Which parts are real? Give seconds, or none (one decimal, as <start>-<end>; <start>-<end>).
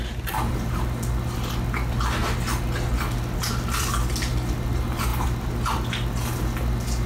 0.0-7.1